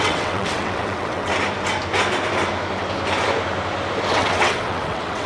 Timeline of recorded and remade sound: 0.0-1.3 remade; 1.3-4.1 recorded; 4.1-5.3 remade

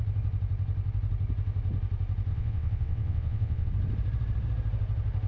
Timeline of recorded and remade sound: 0.0-2.3 recorded; 2.3-3.7 remade; 3.7-5.3 recorded

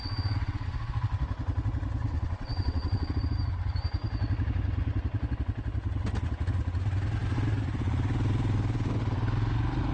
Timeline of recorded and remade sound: 0.0-0.9 remade; 0.9-2.0 recorded; 2.0-3.1 remade; 3.1-9.9 recorded

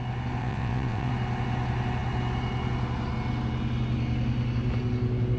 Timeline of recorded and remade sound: 0.0-0.4 recorded; 0.4-1.1 remade; 1.1-5.4 recorded

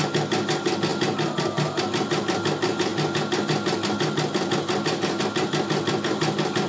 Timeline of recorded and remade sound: 0.0-6.7 recorded